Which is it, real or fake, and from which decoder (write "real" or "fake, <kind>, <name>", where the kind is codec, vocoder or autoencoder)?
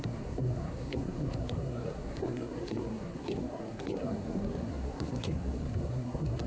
fake, codec, SNAC